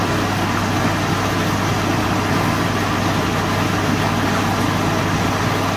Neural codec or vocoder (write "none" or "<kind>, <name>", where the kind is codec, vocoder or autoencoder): none